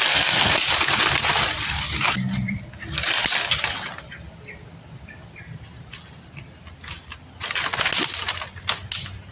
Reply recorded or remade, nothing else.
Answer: recorded